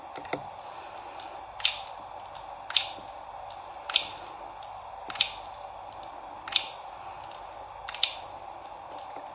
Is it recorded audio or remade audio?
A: recorded